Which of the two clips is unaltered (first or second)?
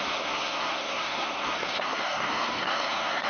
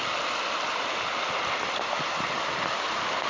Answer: second